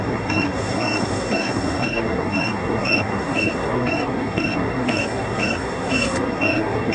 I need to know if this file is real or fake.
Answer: fake